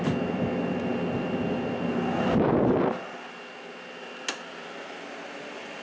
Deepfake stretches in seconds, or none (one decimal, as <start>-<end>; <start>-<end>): none